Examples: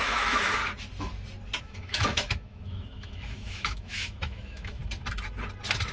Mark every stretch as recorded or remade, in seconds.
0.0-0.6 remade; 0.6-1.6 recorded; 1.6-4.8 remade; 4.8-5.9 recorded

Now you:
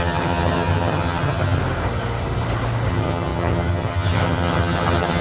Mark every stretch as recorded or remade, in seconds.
0.0-1.6 remade; 1.6-2.9 recorded; 2.9-5.2 remade

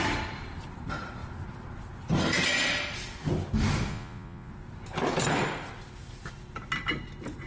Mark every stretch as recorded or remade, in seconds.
0.0-3.9 recorded; 3.9-4.5 remade; 4.5-7.5 recorded

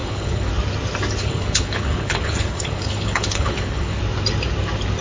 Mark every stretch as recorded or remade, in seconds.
0.0-0.5 remade; 0.5-1.2 recorded; 1.2-4.0 remade; 4.0-5.0 recorded

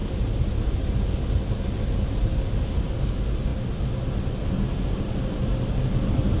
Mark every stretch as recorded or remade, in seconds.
0.0-6.4 recorded